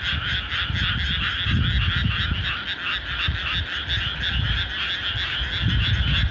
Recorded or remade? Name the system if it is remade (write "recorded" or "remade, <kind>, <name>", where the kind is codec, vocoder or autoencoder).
recorded